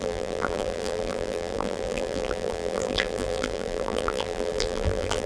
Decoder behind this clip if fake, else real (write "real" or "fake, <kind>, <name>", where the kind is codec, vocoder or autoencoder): fake, vocoder, BigVGAN v2